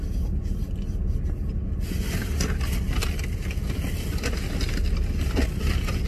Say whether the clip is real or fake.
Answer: real